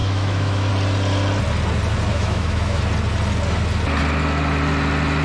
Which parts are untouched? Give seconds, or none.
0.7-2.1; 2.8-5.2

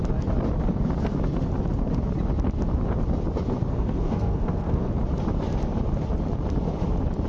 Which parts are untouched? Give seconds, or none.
0.0-3.7; 4.9-7.3

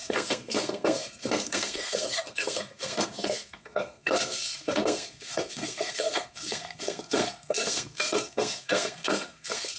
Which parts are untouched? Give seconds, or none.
none

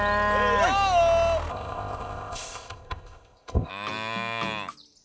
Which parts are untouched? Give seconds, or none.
0.0-1.5; 3.7-5.0

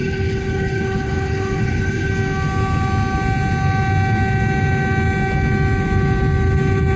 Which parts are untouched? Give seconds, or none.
2.1-7.0

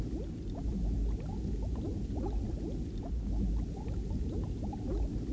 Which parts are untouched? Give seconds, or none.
0.0-5.3

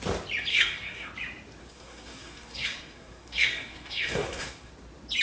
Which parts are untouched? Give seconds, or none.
0.0-0.5; 1.1-1.6; 4.7-5.2

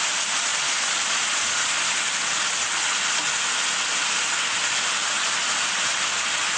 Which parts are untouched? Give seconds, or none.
0.0-6.6